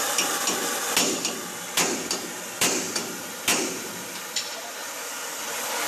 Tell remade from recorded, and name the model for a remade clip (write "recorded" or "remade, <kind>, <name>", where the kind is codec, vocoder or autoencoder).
remade, vocoder, BigVGAN v2